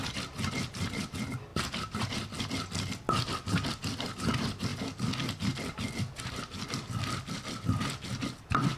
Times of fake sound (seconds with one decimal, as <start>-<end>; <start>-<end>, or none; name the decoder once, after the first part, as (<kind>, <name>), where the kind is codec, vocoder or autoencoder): none